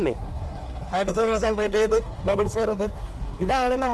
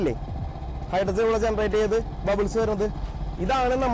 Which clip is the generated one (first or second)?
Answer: first